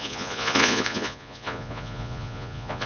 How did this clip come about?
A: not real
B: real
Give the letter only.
A